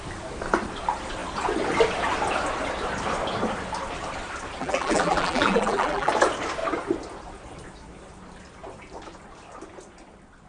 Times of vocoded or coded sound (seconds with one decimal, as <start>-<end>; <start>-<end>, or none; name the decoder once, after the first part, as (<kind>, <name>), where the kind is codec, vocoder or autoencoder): 4.6-6.1 (vocoder, BigVGAN v2)